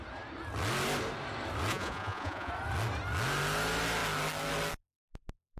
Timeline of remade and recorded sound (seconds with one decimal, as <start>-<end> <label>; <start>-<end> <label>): 0.0-1.7 recorded; 1.7-2.5 remade; 2.5-5.6 recorded